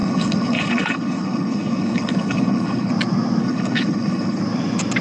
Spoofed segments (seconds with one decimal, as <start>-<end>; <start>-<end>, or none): 0.0-2.9; 3.4-4.4